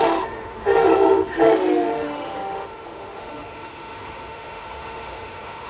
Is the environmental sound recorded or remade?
remade